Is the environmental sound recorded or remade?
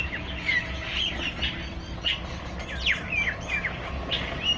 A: recorded